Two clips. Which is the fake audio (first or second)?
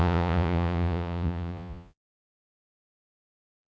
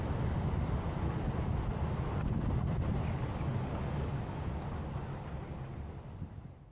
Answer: first